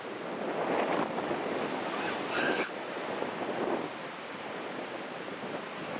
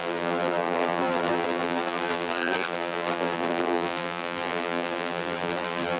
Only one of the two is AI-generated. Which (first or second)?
second